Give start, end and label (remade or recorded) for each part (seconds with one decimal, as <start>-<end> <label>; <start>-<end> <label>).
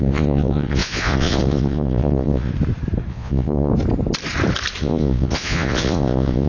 0.0-2.5 remade; 2.5-3.1 recorded; 3.1-3.7 remade; 3.7-4.8 recorded; 4.8-6.5 remade